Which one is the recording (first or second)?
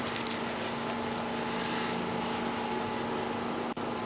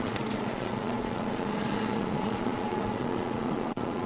first